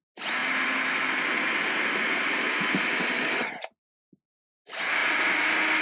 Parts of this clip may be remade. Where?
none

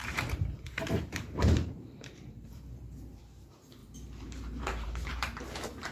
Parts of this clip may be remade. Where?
0.0-5.9

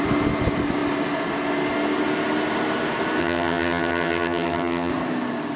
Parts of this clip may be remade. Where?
3.2-4.9

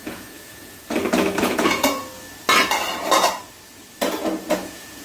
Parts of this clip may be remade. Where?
0.0-0.8; 1.4-2.0; 4.5-5.0

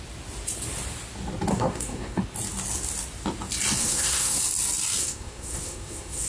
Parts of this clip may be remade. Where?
1.5-2.2; 3.8-4.4; 5.0-6.3